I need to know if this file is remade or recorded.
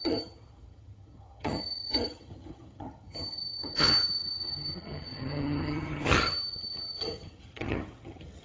remade